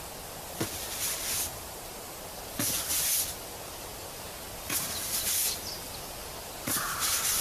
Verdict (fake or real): real